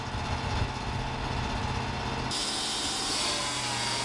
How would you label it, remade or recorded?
recorded